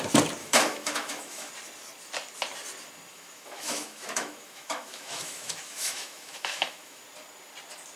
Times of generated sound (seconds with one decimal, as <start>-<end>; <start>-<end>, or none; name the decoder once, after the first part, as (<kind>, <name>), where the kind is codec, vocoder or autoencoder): 0.4-1.5 (autoencoder, DAC-VAE); 3.1-7.0